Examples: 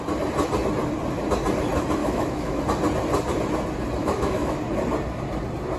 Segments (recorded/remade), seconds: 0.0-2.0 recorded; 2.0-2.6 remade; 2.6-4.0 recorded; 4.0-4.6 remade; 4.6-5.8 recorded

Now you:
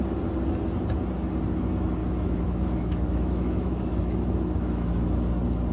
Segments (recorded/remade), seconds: 0.0-2.0 recorded; 2.0-5.2 remade; 5.2-5.7 recorded